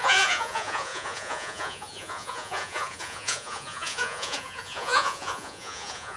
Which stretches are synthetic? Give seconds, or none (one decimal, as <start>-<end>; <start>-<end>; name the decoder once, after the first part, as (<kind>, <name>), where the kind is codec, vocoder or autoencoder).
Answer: 0.0-6.2 (vocoder, Vocos)